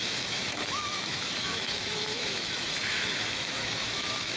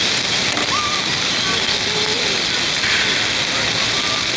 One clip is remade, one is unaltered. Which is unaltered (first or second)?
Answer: second